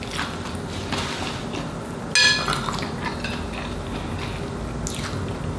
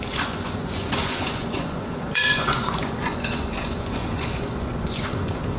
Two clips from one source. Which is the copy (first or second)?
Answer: second